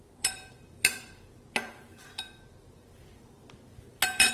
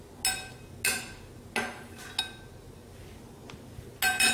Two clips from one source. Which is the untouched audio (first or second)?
second